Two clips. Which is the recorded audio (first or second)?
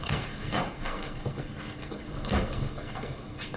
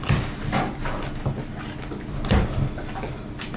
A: second